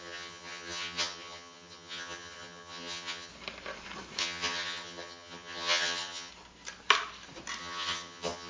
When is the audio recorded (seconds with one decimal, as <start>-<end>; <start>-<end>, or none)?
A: 3.3-4.2; 6.3-7.6